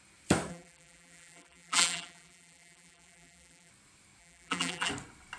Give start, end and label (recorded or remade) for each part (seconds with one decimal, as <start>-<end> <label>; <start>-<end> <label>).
0.0-0.5 recorded; 0.5-3.7 remade; 3.7-4.2 recorded; 4.2-4.9 remade; 4.9-5.4 recorded